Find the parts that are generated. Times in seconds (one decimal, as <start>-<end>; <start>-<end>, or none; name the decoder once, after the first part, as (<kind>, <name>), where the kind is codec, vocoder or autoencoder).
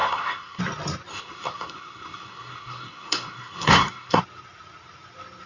0.0-0.6 (codec, SNAC); 1.1-4.2